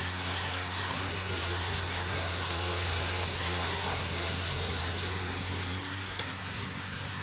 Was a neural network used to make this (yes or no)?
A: yes